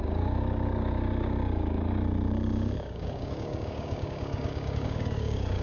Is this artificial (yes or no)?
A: yes